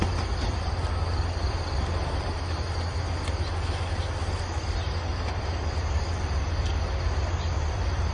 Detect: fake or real fake